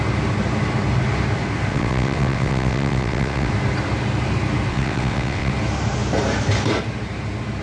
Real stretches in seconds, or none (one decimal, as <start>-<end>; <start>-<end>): 0.0-1.7; 3.5-4.7; 5.5-7.6